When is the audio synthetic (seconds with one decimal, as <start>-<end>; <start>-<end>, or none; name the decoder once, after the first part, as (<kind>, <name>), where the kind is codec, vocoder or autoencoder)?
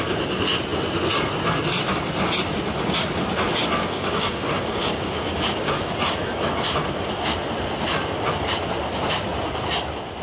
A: 3.8-6.5 (codec, DAC)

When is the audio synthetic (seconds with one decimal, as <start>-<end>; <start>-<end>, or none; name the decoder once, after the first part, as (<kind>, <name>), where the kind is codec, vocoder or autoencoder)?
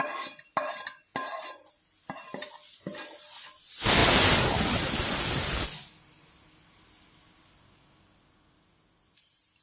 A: none